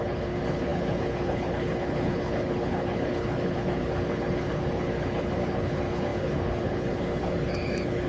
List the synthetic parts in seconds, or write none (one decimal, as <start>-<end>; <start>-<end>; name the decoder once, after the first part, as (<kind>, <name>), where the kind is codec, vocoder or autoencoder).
0.0-8.1 (codec, HILCodec)